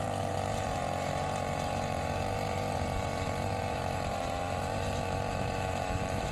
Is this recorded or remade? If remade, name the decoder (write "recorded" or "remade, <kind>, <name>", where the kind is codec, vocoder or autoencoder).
remade, vocoder, BigVGAN v2